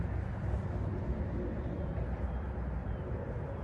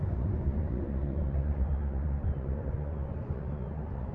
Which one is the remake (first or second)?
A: second